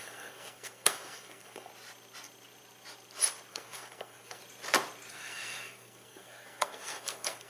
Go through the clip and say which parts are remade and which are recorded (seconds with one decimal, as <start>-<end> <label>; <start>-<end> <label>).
0.0-1.7 remade; 1.7-3.5 recorded; 3.5-4.4 remade; 4.4-5.1 recorded; 5.1-7.5 remade